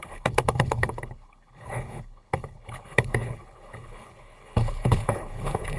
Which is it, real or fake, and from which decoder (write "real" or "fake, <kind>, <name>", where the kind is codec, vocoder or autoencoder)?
fake, codec, HILCodec